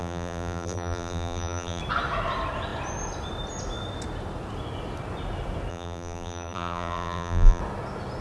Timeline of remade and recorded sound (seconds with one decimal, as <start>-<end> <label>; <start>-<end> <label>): 0.0-1.8 remade; 1.8-5.7 recorded; 5.7-7.6 remade; 7.6-8.2 recorded